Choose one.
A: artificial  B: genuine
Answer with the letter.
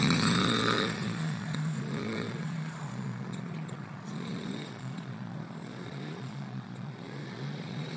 A